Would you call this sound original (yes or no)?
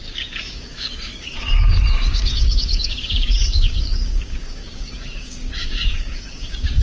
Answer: no